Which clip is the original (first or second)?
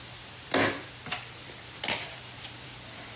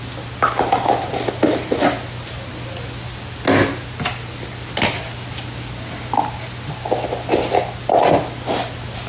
second